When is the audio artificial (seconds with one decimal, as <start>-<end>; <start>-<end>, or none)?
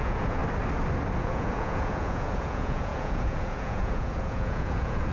0.0-0.4; 1.2-5.1